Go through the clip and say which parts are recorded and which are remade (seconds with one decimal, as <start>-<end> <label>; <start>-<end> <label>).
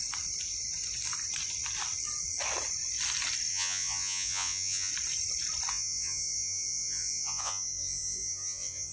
0.0-3.5 recorded; 3.5-4.9 remade; 4.9-5.7 recorded; 5.7-8.9 remade